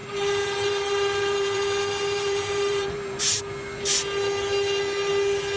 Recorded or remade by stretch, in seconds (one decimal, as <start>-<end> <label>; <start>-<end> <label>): 0.0-3.4 remade; 3.4-5.6 recorded